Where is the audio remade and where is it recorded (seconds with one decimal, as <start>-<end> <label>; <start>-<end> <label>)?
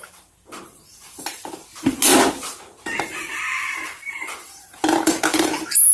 0.0-2.1 remade; 2.1-3.0 recorded; 3.0-5.9 remade